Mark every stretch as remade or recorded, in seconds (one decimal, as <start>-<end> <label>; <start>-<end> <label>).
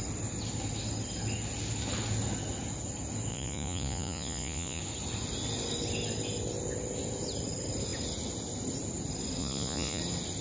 0.0-3.3 recorded; 3.3-4.8 remade; 4.8-9.4 recorded; 9.4-10.0 remade; 10.0-10.4 recorded